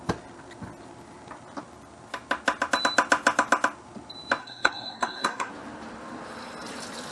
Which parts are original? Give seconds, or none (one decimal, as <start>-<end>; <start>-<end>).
0.0-4.4; 5.5-7.1